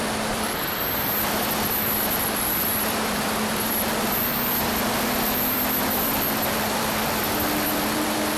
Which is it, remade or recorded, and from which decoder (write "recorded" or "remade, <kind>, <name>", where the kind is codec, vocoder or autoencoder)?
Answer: remade, vocoder, BigVGAN v2